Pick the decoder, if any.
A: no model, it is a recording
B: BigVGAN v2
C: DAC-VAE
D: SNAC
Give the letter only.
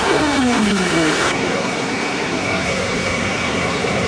D